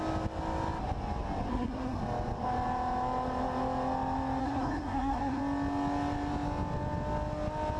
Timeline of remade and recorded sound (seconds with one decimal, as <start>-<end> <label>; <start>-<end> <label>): 0.0-1.5 recorded; 1.5-2.0 remade; 2.0-4.4 recorded; 4.4-5.4 remade; 5.4-7.8 recorded

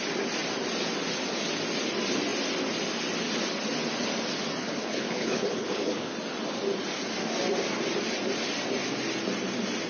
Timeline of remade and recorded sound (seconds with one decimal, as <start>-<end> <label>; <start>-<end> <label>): 0.0-4.6 recorded; 4.6-6.1 remade; 6.1-9.9 recorded